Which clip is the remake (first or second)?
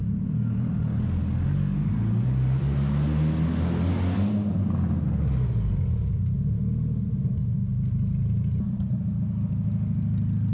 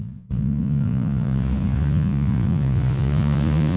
second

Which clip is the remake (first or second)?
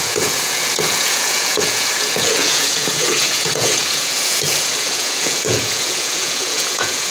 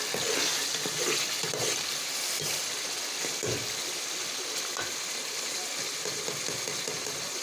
first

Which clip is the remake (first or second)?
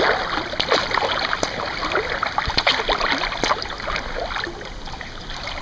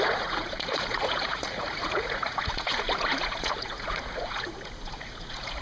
second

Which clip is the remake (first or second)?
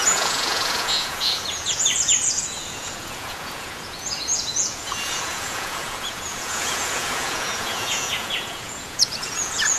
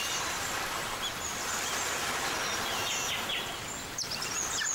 first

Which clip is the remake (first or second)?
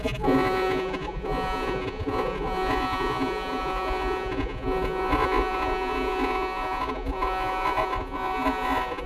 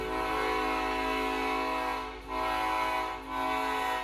first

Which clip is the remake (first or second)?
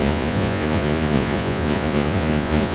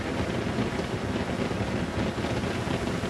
first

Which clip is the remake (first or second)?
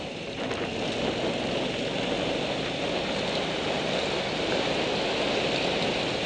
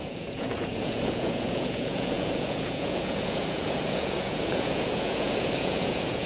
second